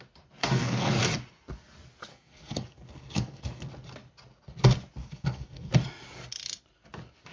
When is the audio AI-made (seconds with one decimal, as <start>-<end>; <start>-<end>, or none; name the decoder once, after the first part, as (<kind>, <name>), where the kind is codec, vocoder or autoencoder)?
0.4-0.9 (codec, SNAC); 2.1-3.7; 5.0-5.7